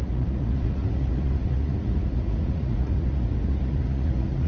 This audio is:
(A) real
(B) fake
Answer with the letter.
B